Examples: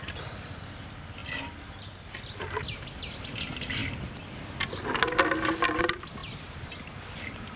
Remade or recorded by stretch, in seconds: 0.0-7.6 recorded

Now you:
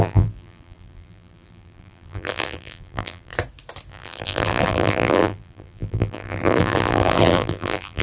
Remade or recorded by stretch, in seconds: 0.0-3.3 remade; 3.3-3.9 recorded; 3.9-8.0 remade

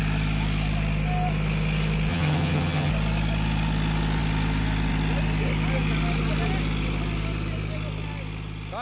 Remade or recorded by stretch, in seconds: 0.0-2.1 recorded; 2.1-2.9 remade; 2.9-8.8 recorded

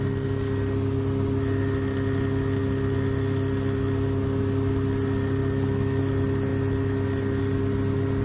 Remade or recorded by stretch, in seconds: 0.0-8.2 recorded

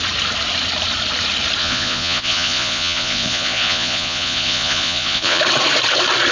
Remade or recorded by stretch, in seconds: 0.0-1.6 recorded; 1.6-5.4 remade; 5.4-6.3 recorded